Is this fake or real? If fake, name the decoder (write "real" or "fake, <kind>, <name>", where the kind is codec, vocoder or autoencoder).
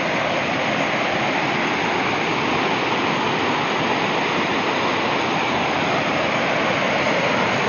real